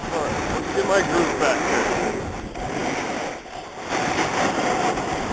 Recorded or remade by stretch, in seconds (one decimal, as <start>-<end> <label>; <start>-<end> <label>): 0.0-5.3 recorded